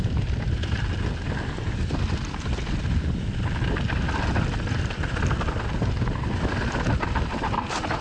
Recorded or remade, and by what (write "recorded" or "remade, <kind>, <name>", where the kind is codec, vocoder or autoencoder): recorded